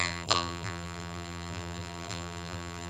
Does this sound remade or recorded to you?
remade